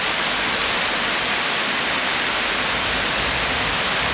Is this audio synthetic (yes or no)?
no